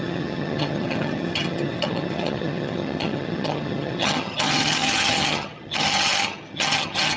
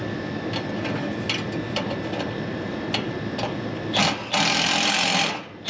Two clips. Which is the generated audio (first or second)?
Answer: first